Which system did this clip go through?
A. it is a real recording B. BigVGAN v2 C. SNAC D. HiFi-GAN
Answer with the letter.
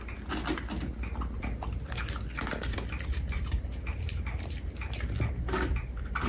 A